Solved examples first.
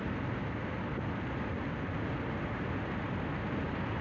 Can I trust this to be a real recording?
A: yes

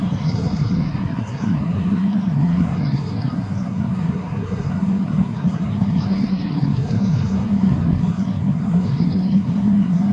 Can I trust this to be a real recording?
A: no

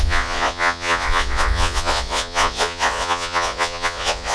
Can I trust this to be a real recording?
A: no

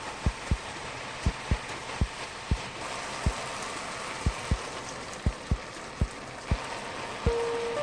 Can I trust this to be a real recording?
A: yes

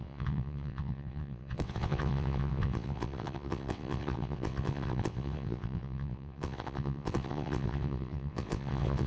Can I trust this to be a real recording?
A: no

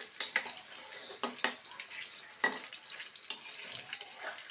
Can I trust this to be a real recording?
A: yes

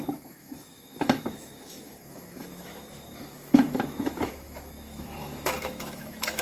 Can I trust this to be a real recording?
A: no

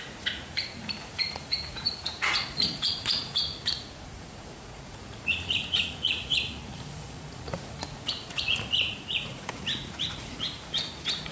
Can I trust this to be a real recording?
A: no